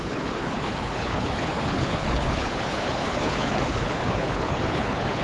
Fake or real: fake